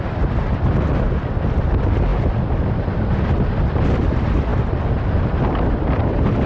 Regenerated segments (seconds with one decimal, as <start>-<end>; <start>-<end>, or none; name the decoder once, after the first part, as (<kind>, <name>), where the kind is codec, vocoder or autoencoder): none